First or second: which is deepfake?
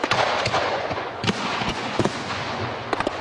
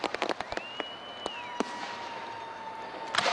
first